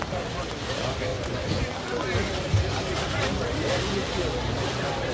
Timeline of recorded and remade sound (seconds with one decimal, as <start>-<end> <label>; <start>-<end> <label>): 0.0-1.1 recorded; 1.1-1.7 remade; 1.7-5.1 recorded